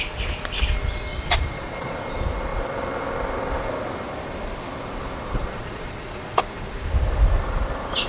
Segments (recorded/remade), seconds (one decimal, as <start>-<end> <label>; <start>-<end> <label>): 0.0-1.1 recorded; 1.1-2.0 remade; 2.0-5.4 recorded; 5.4-6.4 remade; 6.4-8.1 recorded

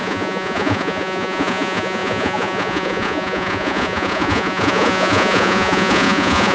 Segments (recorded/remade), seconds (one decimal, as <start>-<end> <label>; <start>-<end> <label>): 0.0-6.5 remade

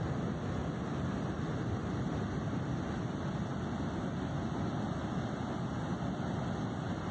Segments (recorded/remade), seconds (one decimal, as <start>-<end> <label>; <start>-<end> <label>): 0.0-7.1 recorded

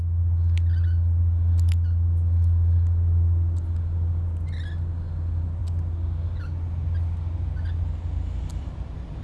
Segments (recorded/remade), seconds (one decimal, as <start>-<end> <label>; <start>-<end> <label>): 0.0-9.2 recorded

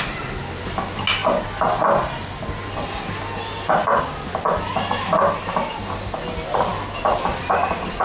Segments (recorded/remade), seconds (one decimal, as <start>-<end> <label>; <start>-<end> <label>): 0.0-8.0 recorded